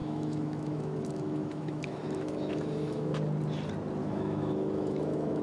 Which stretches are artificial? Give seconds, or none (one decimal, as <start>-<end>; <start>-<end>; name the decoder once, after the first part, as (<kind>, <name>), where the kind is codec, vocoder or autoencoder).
0.0-3.2 (autoencoder, DAC-VAE); 4.0-5.4